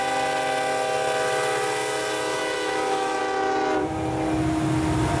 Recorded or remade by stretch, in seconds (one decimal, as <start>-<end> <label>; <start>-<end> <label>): 0.0-2.4 recorded; 2.4-3.2 remade; 3.2-5.2 recorded